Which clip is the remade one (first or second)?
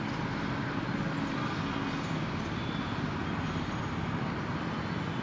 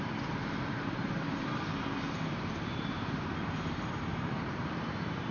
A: second